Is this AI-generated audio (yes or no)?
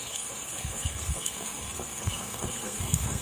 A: yes